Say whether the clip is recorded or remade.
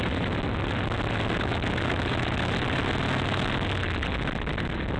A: recorded